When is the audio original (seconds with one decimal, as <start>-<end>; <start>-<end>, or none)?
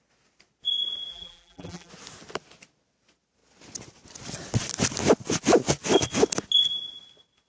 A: 0.0-1.1; 1.9-7.5